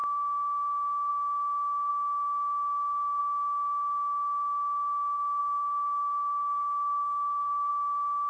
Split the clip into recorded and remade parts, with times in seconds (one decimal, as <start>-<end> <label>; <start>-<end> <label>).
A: 0.0-5.4 recorded; 5.4-7.7 remade; 7.7-8.3 recorded